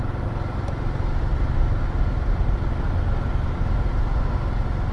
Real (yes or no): yes